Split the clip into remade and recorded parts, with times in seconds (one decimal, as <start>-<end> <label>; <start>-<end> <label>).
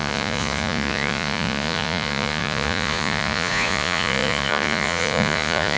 0.0-5.8 remade